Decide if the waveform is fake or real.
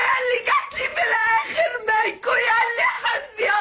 fake